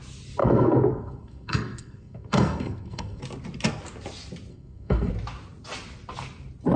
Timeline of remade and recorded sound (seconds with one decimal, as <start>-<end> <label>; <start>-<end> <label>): 0.0-0.4 recorded; 0.4-3.2 remade; 3.2-4.5 recorded; 4.5-5.1 remade; 5.1-6.8 recorded